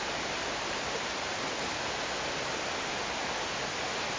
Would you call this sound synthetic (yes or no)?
no